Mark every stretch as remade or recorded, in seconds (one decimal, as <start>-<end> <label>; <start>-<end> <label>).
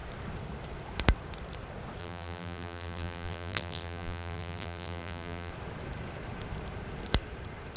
0.0-2.0 recorded; 2.0-5.5 remade; 5.5-7.8 recorded